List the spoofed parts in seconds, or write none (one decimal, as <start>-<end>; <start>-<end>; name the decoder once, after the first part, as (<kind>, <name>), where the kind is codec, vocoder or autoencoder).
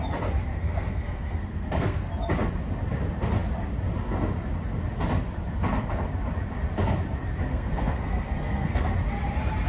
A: 0.5-2.1 (codec, SNAC); 7.5-8.9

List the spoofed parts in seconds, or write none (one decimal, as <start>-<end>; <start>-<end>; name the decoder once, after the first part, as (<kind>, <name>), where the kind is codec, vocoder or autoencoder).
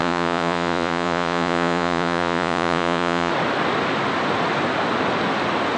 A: 0.0-3.3 (vocoder, Vocos)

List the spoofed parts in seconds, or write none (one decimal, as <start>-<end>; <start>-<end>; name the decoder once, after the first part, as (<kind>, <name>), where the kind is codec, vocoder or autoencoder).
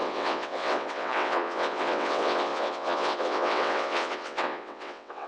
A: 0.0-5.3 (vocoder, WaveNeXt)